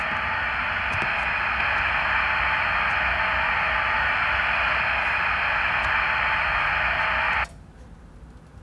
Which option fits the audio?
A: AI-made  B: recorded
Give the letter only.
B